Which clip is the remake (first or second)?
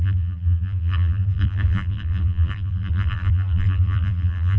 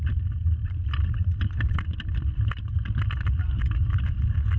first